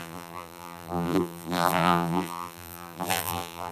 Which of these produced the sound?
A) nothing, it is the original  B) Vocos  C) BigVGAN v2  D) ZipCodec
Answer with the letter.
C